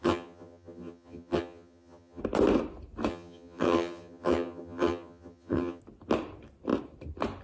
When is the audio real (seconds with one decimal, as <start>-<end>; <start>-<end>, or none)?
2.2-3.1; 5.8-7.4